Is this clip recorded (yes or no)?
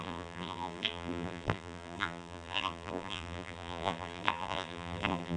no